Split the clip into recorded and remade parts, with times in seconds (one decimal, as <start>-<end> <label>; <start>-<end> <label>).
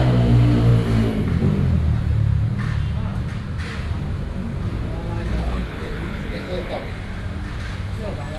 0.0-5.3 recorded; 5.3-6.9 remade; 6.9-8.4 recorded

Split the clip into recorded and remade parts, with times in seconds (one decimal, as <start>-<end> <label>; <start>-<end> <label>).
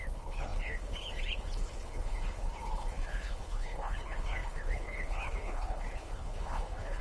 0.0-7.0 remade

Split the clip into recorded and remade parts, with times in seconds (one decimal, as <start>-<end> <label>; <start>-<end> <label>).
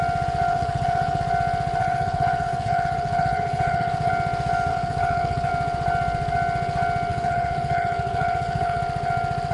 0.0-0.5 recorded; 0.5-1.2 remade; 1.2-1.8 recorded; 1.8-4.1 remade; 4.1-4.7 recorded; 4.7-5.5 remade; 5.5-7.1 recorded; 7.1-8.8 remade; 8.8-9.5 recorded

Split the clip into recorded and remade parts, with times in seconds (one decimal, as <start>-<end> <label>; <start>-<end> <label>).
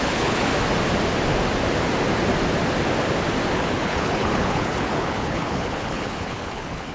0.0-0.5 remade; 0.5-3.5 recorded; 3.5-6.9 remade